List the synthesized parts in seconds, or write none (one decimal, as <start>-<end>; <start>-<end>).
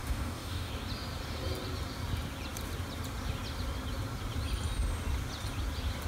0.0-0.7